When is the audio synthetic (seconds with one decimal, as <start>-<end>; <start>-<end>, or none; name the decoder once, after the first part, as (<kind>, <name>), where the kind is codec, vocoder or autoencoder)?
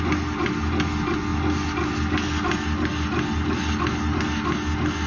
none